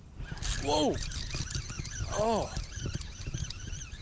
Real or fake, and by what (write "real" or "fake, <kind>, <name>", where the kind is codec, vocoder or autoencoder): real